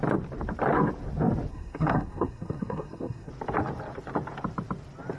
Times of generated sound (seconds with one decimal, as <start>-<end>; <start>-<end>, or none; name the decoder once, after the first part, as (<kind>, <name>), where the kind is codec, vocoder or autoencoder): 1.5-3.3 (codec, SNAC)